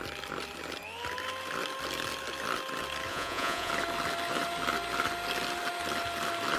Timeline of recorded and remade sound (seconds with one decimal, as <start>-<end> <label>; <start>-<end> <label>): 0.0-3.1 recorded; 3.1-3.7 remade; 3.7-6.6 recorded